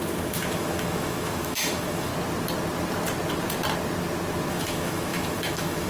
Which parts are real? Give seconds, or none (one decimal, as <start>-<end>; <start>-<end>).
2.1-4.5